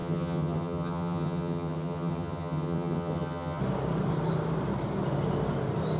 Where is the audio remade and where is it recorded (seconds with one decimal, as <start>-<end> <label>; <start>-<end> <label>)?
0.0-3.6 remade; 3.6-6.0 recorded